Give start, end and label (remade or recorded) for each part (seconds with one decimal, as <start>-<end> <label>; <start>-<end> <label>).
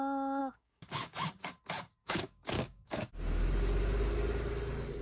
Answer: 0.0-0.4 recorded; 0.4-1.5 remade; 1.5-2.0 recorded; 2.0-3.1 remade; 3.1-5.0 recorded